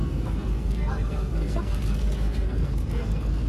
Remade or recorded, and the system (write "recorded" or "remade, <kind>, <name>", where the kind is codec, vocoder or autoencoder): remade, codec, SNAC